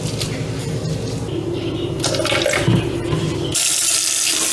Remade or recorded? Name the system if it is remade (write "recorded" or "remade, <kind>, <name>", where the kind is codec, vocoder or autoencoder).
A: recorded